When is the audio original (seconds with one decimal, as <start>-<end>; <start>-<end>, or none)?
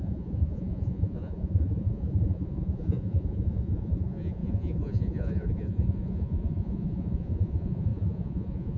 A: none